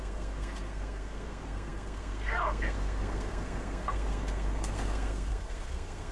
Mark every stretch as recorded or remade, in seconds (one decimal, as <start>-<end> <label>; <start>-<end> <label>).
0.0-6.1 remade

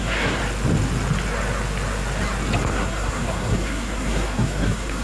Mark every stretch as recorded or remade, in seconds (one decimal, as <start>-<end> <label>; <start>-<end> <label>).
0.0-0.4 remade; 0.4-2.7 recorded; 2.7-5.0 remade

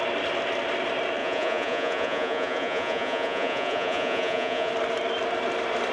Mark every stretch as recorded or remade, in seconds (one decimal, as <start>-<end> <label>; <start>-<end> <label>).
0.0-1.2 recorded; 1.2-4.7 remade; 4.7-5.9 recorded